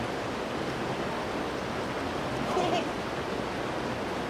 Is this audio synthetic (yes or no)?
no